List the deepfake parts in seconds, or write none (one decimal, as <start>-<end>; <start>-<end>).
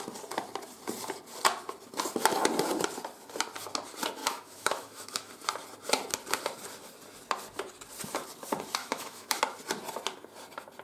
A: 4.2-5.3; 8.8-9.4